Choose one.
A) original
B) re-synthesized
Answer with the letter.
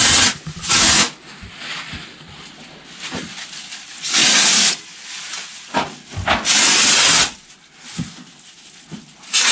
A